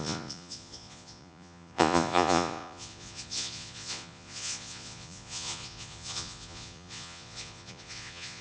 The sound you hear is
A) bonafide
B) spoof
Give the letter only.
B